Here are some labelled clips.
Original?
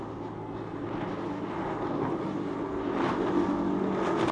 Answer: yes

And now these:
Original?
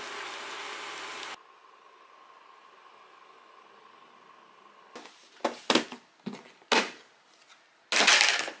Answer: yes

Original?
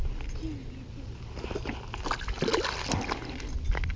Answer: yes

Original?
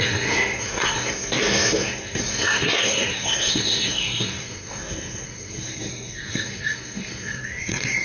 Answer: no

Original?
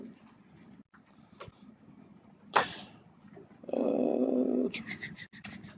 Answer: yes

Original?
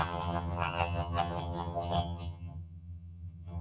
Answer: no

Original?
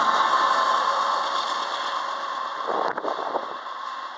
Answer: yes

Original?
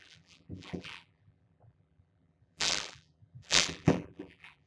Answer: no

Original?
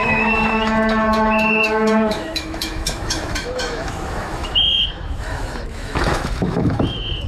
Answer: no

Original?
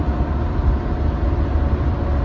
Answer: yes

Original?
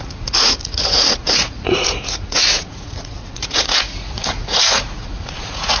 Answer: no